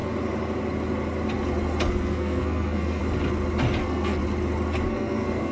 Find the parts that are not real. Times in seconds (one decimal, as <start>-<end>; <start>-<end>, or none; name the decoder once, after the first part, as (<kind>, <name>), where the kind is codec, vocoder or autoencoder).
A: 1.9-3.0 (codec, SNAC); 3.8-4.2; 4.9-5.5